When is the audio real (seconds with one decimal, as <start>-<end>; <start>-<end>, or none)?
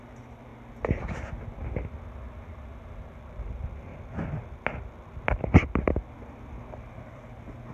0.5-3.2; 3.9-6.2